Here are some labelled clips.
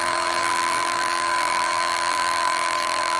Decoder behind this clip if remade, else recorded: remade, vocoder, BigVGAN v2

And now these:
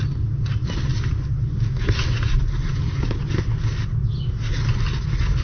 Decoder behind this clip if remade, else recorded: recorded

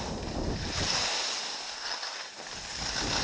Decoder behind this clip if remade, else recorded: recorded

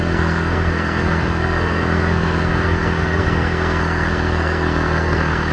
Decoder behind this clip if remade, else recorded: remade, codec, SNAC